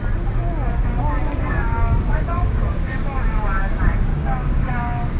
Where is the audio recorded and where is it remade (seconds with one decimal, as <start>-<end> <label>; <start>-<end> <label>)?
0.0-1.3 recorded; 1.3-3.0 remade; 3.0-4.1 recorded; 4.1-4.7 remade; 4.7-5.2 recorded